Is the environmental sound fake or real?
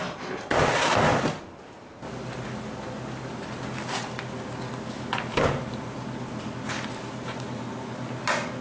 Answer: real